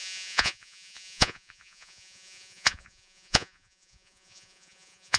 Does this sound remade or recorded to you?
remade